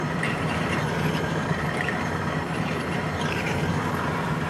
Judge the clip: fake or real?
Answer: fake